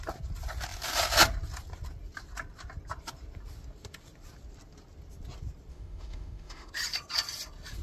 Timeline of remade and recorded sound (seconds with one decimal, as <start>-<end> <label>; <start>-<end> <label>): 0.0-5.7 recorded; 5.7-6.7 remade; 6.7-7.8 recorded